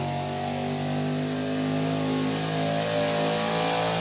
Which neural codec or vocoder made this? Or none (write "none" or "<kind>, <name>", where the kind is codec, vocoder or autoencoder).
none